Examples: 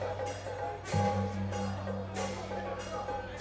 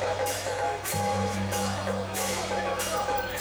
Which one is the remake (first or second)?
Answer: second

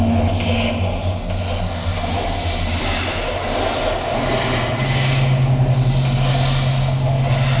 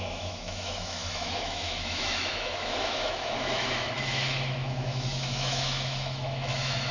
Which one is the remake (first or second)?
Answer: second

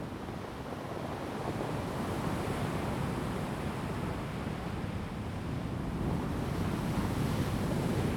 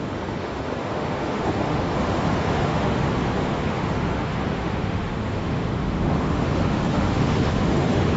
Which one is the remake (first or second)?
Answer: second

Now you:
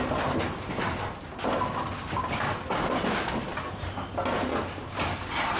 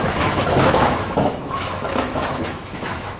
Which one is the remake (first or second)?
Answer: second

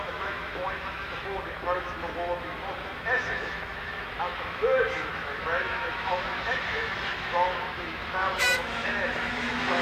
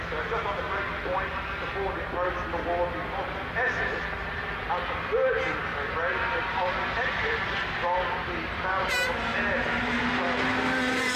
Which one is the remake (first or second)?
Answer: first